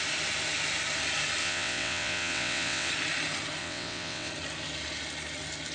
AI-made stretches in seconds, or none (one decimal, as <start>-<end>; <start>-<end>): 1.4-2.9; 3.6-4.3